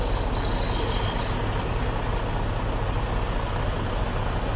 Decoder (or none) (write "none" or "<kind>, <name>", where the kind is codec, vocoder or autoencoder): none